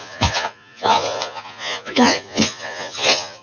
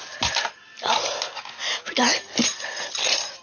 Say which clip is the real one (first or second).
second